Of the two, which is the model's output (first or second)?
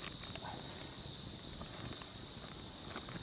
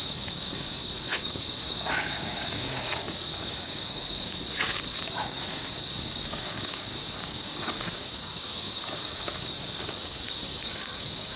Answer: second